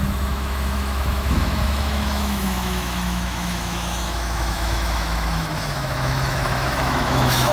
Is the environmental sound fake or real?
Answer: fake